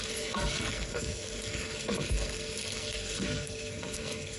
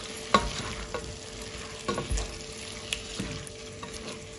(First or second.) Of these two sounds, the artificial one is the first